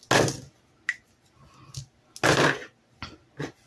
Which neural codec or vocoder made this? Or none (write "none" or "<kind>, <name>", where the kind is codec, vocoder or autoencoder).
none